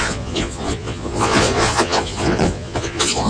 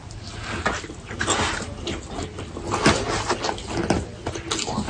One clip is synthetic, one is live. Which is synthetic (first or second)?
first